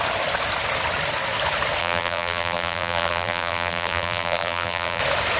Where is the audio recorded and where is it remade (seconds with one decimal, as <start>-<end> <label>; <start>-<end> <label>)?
0.0-1.8 recorded; 1.8-5.0 remade; 5.0-5.4 recorded